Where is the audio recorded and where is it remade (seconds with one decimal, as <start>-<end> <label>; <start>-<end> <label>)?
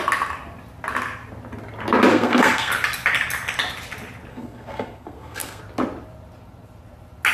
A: 0.0-2.1 recorded; 2.1-2.7 remade; 2.7-4.3 recorded; 4.3-5.6 remade; 5.6-7.3 recorded